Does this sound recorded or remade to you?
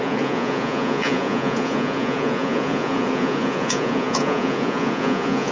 remade